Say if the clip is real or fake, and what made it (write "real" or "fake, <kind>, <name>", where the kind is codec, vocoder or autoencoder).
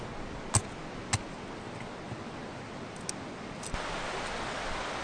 real